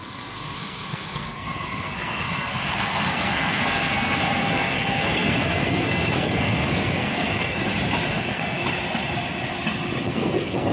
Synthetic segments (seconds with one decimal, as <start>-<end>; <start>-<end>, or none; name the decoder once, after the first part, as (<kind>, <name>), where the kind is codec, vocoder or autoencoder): 0.0-7.6 (codec, SNAC); 8.1-8.6; 10.0-10.7